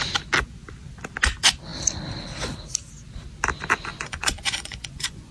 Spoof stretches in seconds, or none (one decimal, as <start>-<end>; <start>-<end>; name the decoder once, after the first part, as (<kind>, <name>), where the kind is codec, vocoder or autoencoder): 3.9-5.3 (vocoder, Vocos)